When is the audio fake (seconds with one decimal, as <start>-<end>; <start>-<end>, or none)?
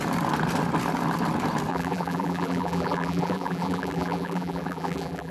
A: 1.7-5.3